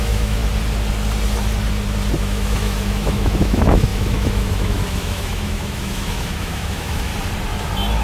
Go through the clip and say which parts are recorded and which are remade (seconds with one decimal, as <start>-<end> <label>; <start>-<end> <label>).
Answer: 0.0-0.4 remade; 0.4-2.2 recorded; 2.2-7.1 remade; 7.1-8.0 recorded